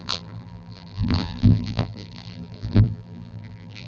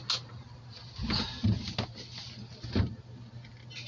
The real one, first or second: second